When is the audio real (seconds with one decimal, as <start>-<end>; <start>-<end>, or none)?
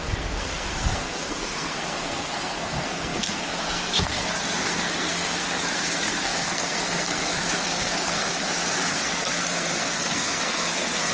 none